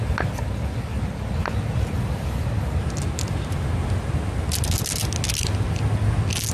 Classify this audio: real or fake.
real